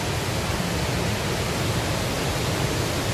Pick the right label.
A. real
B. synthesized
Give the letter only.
A